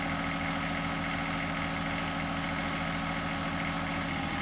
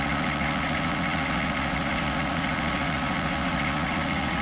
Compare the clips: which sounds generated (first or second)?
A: second